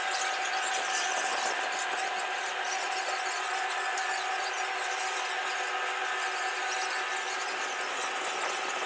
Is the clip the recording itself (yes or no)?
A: yes